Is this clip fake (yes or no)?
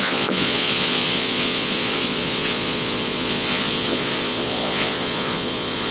yes